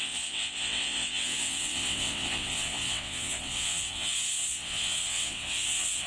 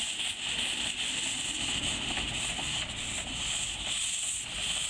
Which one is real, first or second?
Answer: second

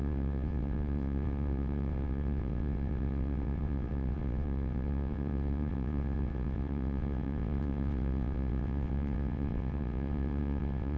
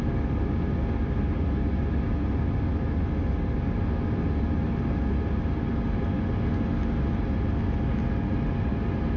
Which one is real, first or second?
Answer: second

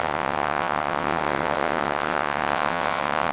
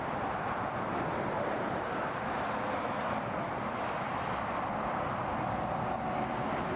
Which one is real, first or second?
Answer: second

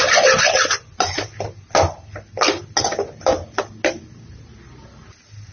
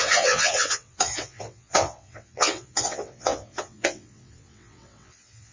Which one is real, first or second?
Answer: first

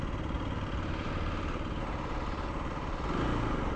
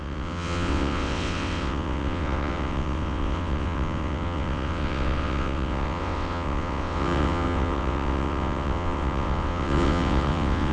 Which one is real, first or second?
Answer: first